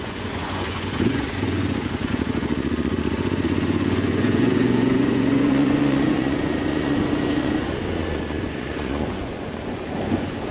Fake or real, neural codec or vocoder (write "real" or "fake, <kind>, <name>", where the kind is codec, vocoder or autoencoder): fake, vocoder, Vocos